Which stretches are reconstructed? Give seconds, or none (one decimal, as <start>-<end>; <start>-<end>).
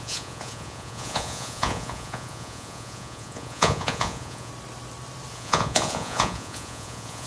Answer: 0.0-4.5; 5.3-7.3